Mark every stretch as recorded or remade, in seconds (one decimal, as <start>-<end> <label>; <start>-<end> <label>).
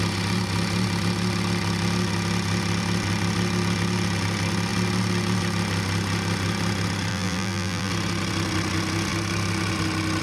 0.0-7.1 recorded; 7.1-7.9 remade; 7.9-10.2 recorded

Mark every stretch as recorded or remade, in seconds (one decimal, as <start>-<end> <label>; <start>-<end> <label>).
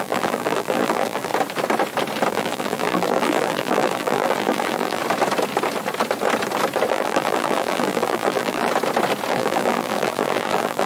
0.0-1.3 remade; 1.3-2.3 recorded; 2.3-5.0 remade; 5.0-6.9 recorded; 6.9-8.7 remade; 8.7-9.3 recorded; 9.3-10.9 remade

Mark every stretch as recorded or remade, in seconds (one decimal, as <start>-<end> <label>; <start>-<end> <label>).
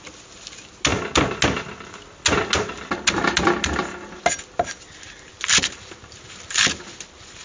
0.0-5.3 recorded; 5.3-7.4 remade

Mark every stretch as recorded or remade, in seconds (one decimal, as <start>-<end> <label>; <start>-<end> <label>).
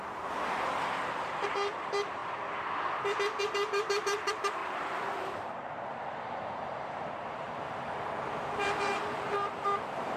0.0-2.2 remade; 2.2-3.4 recorded; 3.4-10.2 remade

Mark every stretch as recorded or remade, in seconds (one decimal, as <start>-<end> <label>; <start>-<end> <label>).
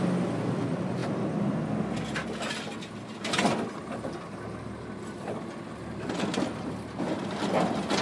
0.0-8.0 recorded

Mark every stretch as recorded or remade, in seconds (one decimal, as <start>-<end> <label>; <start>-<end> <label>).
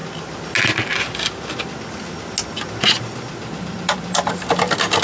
0.0-3.4 recorded; 3.4-4.3 remade; 4.3-5.0 recorded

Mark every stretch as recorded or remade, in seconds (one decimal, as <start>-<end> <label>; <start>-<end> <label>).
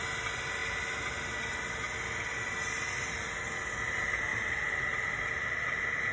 0.0-6.1 recorded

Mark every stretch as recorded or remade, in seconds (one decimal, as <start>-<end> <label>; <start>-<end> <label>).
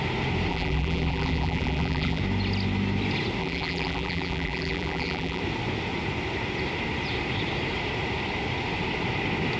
0.0-0.5 recorded; 0.5-2.2 remade; 2.2-3.4 recorded; 3.4-5.4 remade; 5.4-9.6 recorded